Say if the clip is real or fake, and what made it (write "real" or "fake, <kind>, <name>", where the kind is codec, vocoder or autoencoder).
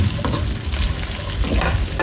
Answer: real